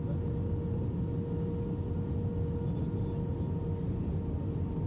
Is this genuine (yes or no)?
yes